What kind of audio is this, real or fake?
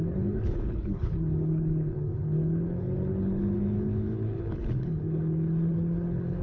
fake